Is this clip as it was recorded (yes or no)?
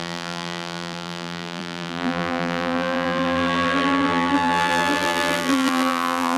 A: no